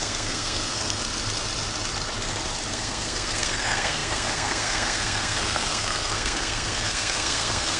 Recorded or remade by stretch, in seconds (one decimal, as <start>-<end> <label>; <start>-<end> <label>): 0.0-1.0 remade; 1.0-2.7 recorded; 2.7-7.8 remade